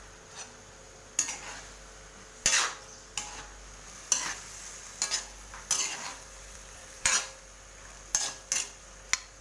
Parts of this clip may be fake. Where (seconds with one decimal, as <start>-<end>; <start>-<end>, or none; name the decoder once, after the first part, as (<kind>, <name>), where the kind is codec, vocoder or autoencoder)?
6.1-7.4 (vocoder, BigVGAN v2)